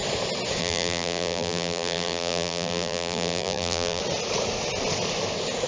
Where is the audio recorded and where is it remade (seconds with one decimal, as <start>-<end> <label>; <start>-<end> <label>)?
0.0-0.6 recorded; 0.6-4.0 remade; 4.0-5.7 recorded